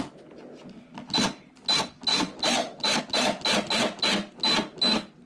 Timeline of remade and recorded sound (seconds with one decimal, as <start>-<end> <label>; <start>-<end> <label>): 0.0-2.1 recorded; 2.1-3.0 remade; 3.0-5.3 recorded